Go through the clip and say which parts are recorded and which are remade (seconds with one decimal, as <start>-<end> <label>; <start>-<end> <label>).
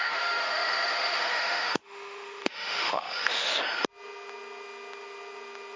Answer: 0.0-3.5 remade; 3.5-5.8 recorded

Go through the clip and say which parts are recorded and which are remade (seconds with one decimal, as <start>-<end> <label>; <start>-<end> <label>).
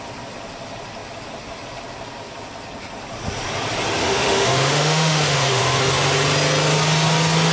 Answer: 0.0-4.0 recorded; 4.0-5.6 remade; 5.6-7.5 recorded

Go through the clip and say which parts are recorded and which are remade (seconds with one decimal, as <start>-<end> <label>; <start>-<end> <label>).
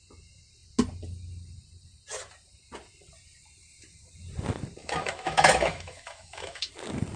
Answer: 0.0-4.8 recorded; 4.8-6.7 remade; 6.7-7.2 recorded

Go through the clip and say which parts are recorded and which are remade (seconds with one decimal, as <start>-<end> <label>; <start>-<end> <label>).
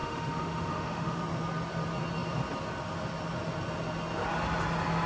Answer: 0.0-1.2 remade; 1.2-5.1 recorded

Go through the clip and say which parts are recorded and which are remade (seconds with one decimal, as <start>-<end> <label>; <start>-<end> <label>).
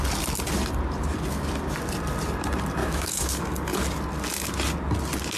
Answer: 0.0-2.8 recorded; 2.8-3.3 remade; 3.3-5.4 recorded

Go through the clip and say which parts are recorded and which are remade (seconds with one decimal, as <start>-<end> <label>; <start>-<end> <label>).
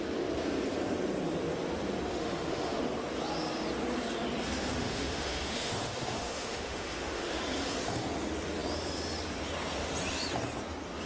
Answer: 0.0-2.1 recorded; 2.1-2.8 remade; 2.8-4.7 recorded; 4.7-7.4 remade; 7.4-11.1 recorded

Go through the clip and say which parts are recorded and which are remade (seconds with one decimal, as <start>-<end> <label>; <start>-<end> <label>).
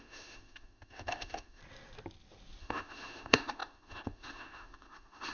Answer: 0.0-1.6 remade; 1.6-2.6 recorded; 2.6-5.3 remade